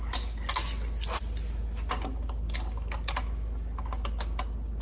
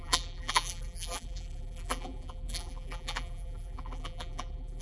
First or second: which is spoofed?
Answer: second